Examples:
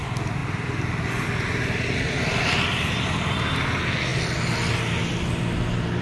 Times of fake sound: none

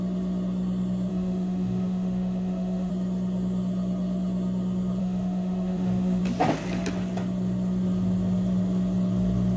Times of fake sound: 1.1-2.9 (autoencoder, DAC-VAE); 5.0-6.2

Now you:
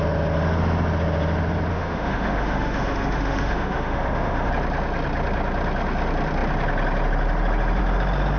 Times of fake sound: 1.7-4.5 (autoencoder, DAC-VAE)

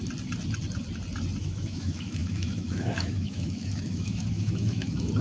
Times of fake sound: 1.4-5.2 (autoencoder, DAC-VAE)